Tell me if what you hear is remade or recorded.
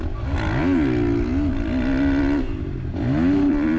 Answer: recorded